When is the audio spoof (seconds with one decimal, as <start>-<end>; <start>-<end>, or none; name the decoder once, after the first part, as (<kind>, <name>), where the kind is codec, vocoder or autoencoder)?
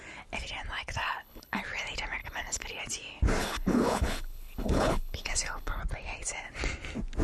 1.0-1.6 (codec, HILCodec); 2.2-2.8; 3.4-5.8